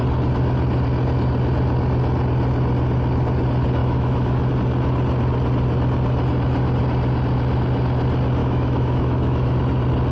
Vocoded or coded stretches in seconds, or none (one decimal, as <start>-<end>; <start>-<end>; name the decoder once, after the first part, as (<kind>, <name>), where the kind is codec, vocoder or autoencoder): 3.8-4.5 (autoencoder, DAC-VAE); 8.4-9.6